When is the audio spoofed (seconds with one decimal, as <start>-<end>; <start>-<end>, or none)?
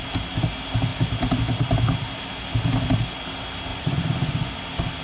3.7-4.5